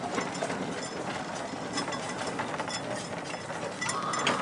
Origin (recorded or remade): recorded